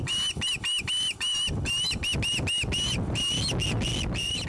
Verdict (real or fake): real